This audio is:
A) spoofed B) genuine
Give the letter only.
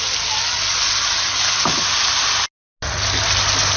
B